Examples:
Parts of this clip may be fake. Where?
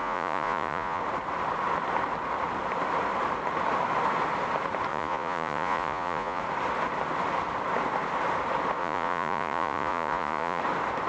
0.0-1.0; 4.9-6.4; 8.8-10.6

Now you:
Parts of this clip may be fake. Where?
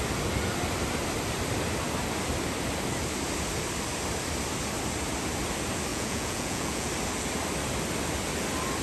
5.9-6.9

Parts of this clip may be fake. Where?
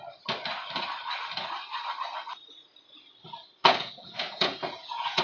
3.6-5.2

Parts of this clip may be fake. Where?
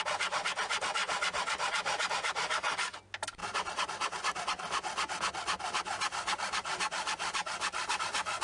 none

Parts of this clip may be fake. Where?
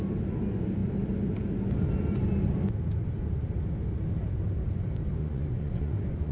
5.2-6.3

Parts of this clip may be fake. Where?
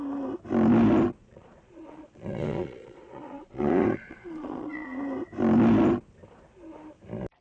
1.2-5.0